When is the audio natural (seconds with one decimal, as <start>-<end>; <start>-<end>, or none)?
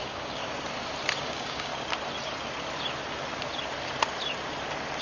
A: 0.4-1.2; 1.7-5.0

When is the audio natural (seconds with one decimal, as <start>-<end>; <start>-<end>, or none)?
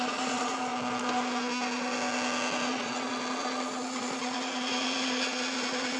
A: 0.7-2.7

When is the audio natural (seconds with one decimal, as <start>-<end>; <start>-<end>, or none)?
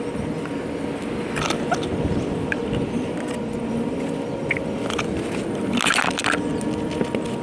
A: 0.0-7.4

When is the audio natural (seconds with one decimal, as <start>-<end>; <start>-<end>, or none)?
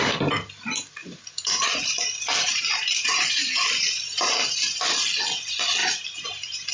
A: 0.0-1.0; 4.8-5.8